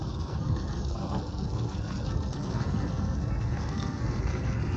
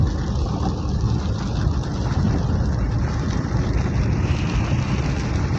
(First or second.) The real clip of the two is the second